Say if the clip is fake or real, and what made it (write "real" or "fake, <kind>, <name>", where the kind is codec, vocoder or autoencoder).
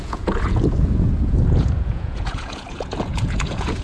fake, vocoder, Vocos